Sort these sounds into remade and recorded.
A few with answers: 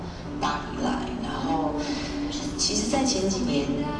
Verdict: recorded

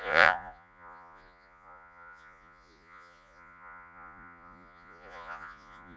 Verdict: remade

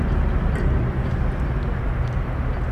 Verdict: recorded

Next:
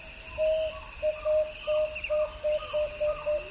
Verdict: recorded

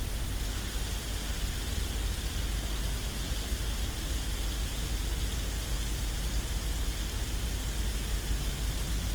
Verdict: recorded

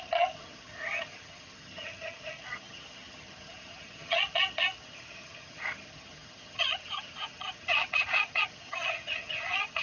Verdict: remade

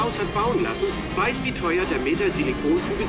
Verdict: recorded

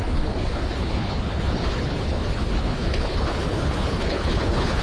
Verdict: remade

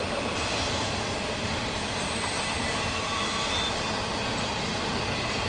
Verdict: recorded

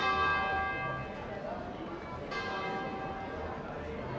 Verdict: recorded